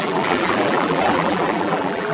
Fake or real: fake